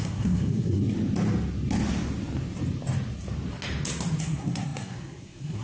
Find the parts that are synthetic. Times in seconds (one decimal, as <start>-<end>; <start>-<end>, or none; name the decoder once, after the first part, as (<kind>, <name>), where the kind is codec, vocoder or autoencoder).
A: 0.0-0.8 (codec, SNAC); 4.2-5.6